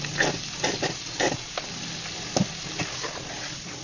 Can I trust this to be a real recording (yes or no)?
yes